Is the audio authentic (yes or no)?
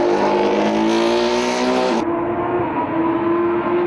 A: yes